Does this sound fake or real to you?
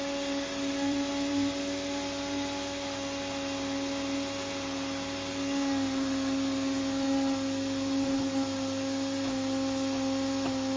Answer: real